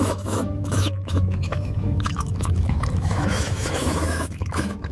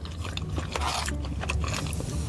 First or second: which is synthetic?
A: first